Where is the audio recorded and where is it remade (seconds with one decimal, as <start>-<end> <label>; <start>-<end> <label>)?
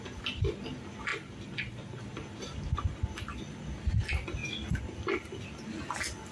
0.0-1.1 recorded; 1.1-2.0 remade; 2.0-6.3 recorded